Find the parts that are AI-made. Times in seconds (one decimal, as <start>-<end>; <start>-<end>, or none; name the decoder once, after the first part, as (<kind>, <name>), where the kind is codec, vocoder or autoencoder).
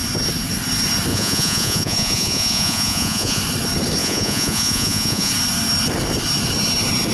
1.1-3.4 (vocoder, Vocos); 4.0-5.3